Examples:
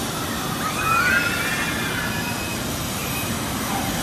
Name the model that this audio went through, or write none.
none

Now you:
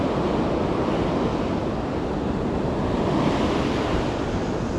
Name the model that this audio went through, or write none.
none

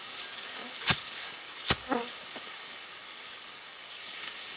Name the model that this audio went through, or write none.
codec, DAC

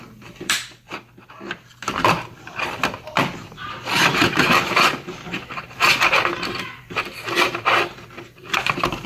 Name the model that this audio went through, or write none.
vocoder, BigVGAN v2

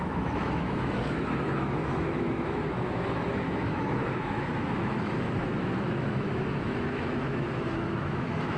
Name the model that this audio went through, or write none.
autoencoder, DAC-VAE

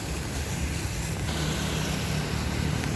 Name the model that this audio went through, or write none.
none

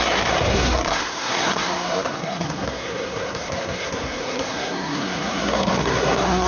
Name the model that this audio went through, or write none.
codec, SNAC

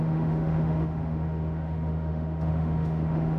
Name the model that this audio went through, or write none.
autoencoder, DAC-VAE